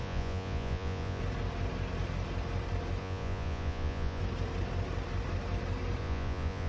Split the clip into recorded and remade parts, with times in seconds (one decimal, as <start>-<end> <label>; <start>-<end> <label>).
0.0-1.2 remade; 1.2-3.0 recorded; 3.0-4.2 remade; 4.2-6.0 recorded; 6.0-6.7 remade